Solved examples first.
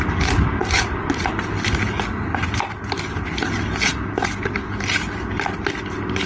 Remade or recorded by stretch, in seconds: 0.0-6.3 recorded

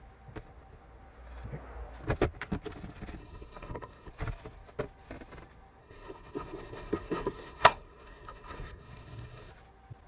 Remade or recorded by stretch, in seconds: 0.0-3.2 recorded; 3.2-4.1 remade; 4.1-5.8 recorded; 5.8-9.5 remade; 9.5-10.1 recorded